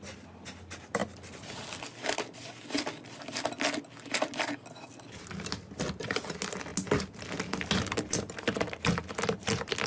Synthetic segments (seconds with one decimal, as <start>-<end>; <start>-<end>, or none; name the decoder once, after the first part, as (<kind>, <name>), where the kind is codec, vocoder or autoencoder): none